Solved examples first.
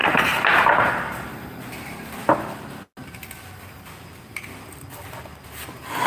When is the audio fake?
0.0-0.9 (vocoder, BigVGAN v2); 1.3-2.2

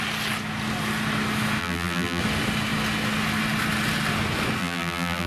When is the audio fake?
1.6-2.2 (vocoder, BigVGAN v2); 4.6-5.3